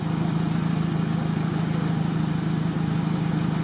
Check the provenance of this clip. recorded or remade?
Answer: recorded